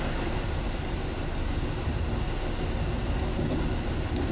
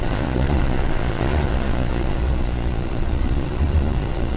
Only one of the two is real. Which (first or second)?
first